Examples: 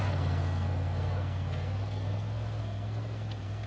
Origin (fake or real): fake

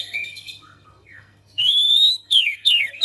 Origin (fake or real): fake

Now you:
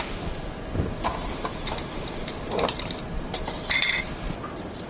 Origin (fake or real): real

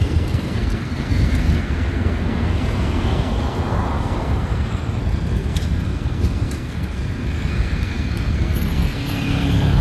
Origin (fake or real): fake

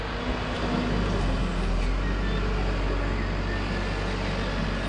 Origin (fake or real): real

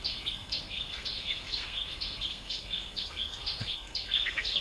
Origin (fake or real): fake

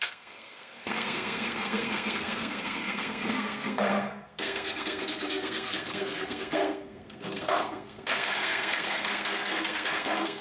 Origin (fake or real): fake